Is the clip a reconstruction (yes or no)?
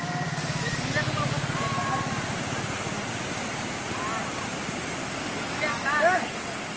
no